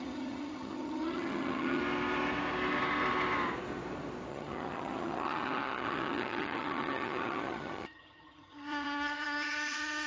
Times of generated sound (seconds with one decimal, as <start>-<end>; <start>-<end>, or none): 0.0-1.8; 4.3-10.1